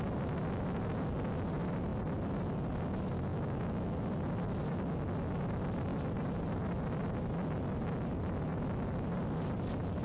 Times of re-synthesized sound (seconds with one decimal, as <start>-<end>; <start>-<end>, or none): 3.3-4.0